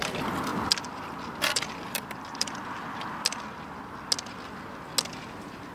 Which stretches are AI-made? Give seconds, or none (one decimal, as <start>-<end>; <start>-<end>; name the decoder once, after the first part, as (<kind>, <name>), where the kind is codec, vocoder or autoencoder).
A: 0.5-3.0 (vocoder, BigVGAN v2)